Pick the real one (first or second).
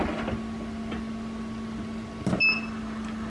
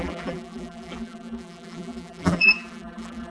first